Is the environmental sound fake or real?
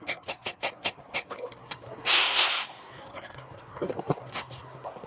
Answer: fake